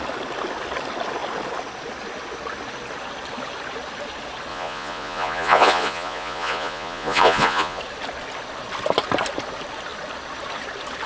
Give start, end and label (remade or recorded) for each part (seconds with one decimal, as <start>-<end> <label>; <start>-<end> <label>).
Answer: 0.0-4.5 recorded; 4.5-7.8 remade; 7.8-11.1 recorded